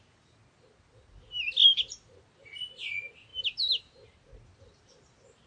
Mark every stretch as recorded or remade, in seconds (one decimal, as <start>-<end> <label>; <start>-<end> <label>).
0.0-5.5 recorded

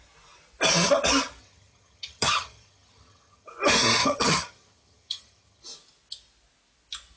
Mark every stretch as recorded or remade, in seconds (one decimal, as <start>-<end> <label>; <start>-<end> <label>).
0.0-1.4 recorded; 1.4-3.5 remade; 3.5-4.0 recorded; 4.0-5.6 remade; 5.6-7.2 recorded

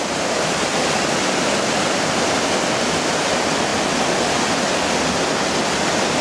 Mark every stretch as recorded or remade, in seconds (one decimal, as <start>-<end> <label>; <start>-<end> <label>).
0.0-6.2 recorded

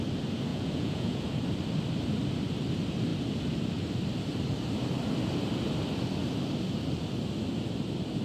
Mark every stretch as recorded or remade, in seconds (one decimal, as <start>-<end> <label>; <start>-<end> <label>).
0.0-0.5 recorded; 0.5-1.3 remade; 1.3-8.2 recorded

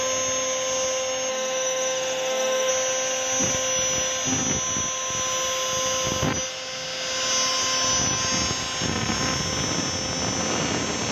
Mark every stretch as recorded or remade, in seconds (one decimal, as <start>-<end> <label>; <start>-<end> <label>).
0.0-1.3 recorded; 1.3-2.7 remade; 2.7-11.1 recorded

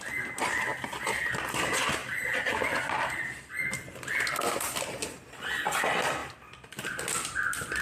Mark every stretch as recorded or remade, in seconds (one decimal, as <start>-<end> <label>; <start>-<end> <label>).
0.0-0.7 recorded; 0.7-1.6 remade; 1.6-2.0 recorded; 2.0-3.5 remade; 3.5-6.2 recorded; 6.2-7.8 remade